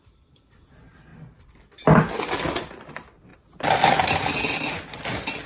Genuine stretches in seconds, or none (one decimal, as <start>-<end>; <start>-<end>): 0.0-5.5